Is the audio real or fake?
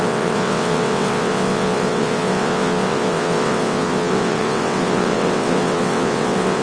fake